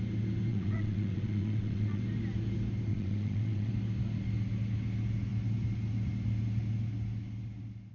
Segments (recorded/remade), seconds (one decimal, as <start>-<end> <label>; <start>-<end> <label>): 0.0-0.5 recorded; 0.5-2.0 remade; 2.0-2.9 recorded; 2.9-3.7 remade; 3.7-7.9 recorded